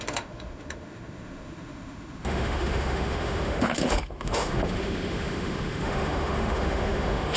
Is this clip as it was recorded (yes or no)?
no